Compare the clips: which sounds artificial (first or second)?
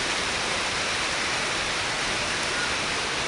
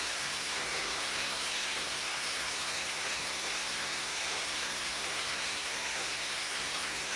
second